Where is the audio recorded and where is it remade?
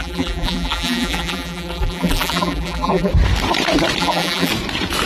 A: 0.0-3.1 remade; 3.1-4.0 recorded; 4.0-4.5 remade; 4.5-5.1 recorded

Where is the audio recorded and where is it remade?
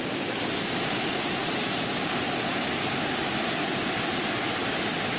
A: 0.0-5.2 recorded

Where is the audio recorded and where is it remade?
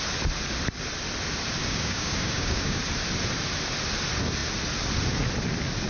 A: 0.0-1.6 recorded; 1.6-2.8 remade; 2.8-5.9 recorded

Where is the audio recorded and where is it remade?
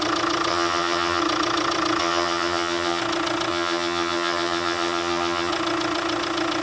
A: 0.0-0.5 recorded; 0.5-1.2 remade; 1.2-2.0 recorded; 2.0-3.0 remade; 3.0-3.5 recorded; 3.5-5.5 remade; 5.5-6.6 recorded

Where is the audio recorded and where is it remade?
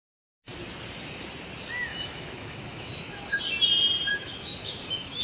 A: 0.0-1.9 recorded; 1.9-3.4 remade; 3.4-4.1 recorded; 4.1-5.2 remade